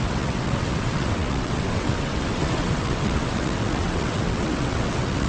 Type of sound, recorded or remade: remade